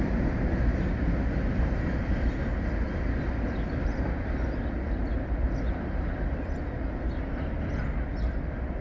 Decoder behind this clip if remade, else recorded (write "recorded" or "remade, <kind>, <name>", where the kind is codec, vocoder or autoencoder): recorded